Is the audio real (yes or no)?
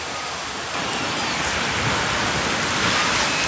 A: yes